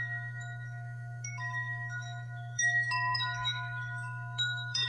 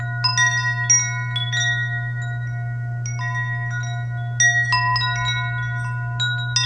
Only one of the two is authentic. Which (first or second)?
second